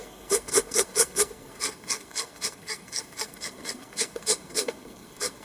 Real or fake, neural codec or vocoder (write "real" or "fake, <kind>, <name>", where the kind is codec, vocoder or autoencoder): fake, codec, SNAC